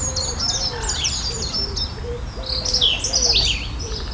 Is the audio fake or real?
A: real